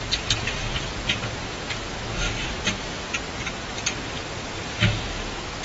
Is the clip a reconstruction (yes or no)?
no